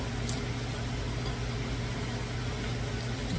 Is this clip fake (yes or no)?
no